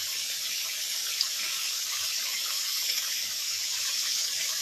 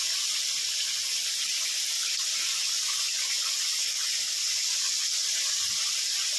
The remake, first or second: first